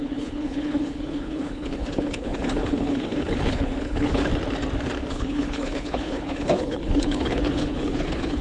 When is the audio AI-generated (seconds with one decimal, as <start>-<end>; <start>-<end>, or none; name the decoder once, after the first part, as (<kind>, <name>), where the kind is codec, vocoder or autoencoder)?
0.0-4.3 (codec, HILCodec); 5.1-8.4